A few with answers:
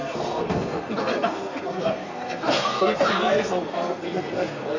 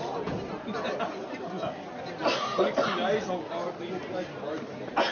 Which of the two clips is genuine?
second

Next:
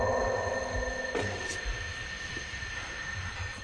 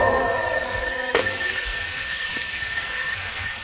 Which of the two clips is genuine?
first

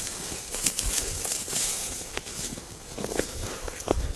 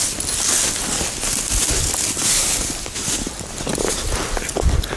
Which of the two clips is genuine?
second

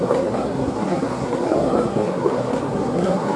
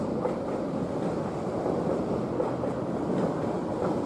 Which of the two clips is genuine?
second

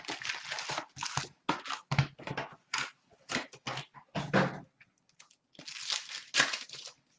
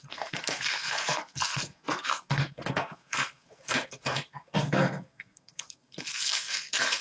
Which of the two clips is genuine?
first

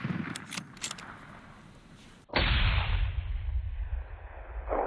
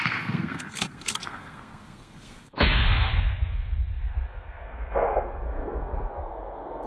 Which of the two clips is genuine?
first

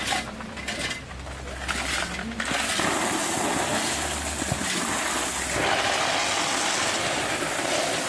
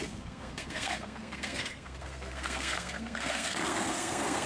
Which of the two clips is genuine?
first